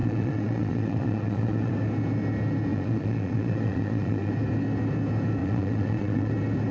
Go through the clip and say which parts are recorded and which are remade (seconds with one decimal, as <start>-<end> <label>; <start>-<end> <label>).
0.0-1.7 remade; 1.7-2.7 recorded; 2.7-4.3 remade; 4.3-5.4 recorded; 5.4-6.3 remade; 6.3-6.7 recorded